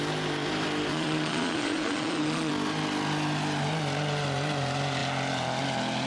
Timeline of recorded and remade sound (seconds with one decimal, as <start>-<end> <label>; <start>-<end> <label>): 0.0-0.9 recorded; 0.9-2.5 remade; 2.5-6.1 recorded